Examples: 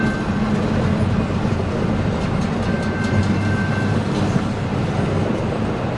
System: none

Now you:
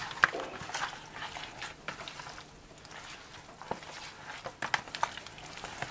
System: none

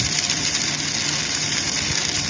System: vocoder, BigVGAN v2